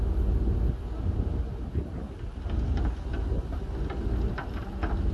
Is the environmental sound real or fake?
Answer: real